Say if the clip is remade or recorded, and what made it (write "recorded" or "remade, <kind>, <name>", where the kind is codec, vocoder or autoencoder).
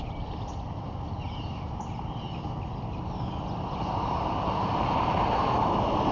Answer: recorded